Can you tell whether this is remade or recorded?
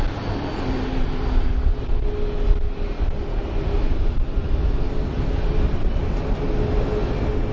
recorded